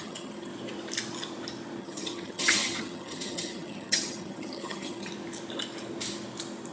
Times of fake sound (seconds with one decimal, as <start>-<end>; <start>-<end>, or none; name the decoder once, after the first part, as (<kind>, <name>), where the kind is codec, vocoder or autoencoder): 0.0-0.5 (vocoder, HiFi-GAN); 1.8-5.1